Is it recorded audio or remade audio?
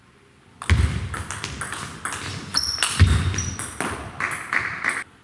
recorded